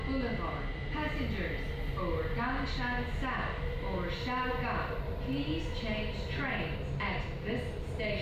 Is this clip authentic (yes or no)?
yes